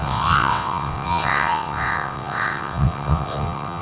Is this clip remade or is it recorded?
remade